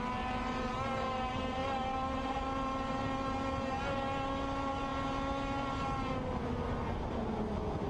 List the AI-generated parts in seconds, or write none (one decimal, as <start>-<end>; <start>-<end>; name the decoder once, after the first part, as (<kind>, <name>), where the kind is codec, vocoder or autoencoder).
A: none